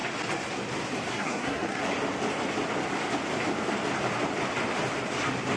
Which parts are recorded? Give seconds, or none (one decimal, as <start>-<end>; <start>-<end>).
0.0-1.1; 1.8-5.6